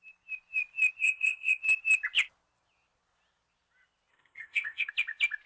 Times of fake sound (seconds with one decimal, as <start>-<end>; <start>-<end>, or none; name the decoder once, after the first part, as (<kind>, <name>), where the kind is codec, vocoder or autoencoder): 1.0-1.6 (codec, ZipCodec); 4.1-4.9